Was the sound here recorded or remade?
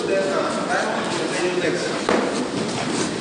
recorded